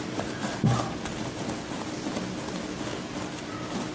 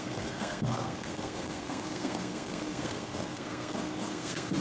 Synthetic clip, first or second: second